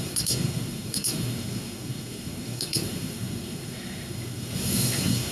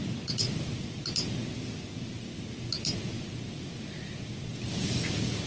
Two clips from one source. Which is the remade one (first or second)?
first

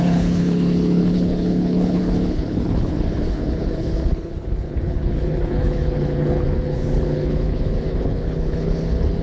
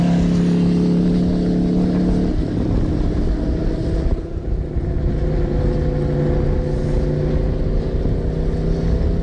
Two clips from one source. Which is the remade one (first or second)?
first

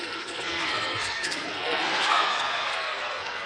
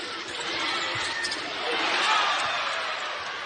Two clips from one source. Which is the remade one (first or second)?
first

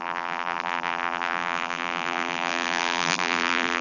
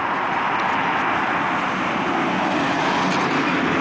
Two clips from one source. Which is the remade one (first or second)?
first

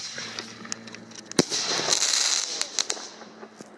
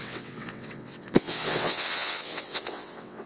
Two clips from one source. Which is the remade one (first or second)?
second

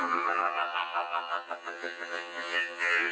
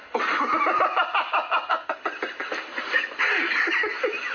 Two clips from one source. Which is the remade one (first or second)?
first